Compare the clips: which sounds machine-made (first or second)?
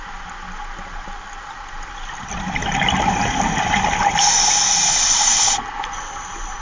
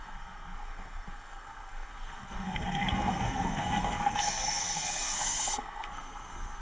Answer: second